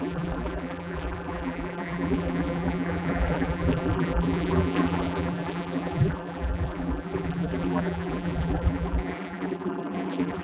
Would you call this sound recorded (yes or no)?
no